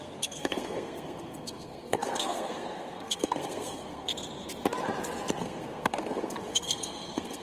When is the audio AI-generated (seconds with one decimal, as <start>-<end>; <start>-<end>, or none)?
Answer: 0.0-4.1; 5.4-7.4